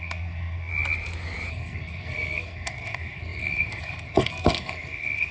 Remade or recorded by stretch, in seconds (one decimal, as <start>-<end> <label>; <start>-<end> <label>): 0.0-0.7 remade; 0.7-1.5 recorded; 1.5-5.3 remade